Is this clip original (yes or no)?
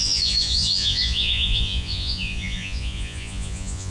no